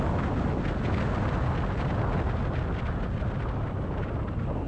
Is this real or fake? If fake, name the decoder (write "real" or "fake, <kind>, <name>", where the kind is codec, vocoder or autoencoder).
real